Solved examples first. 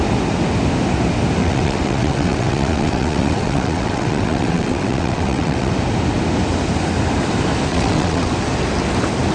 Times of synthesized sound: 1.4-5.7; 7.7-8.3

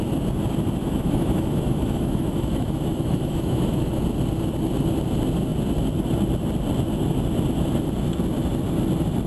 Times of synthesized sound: 0.8-3.9

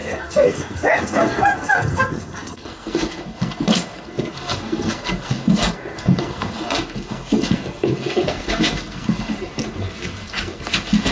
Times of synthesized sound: 0.0-11.1

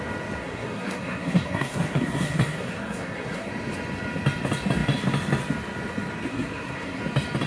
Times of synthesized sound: 0.4-3.5; 6.3-7.0

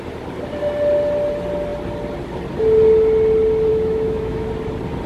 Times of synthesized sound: 3.7-4.5